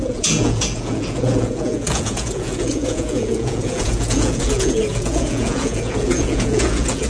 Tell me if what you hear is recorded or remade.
remade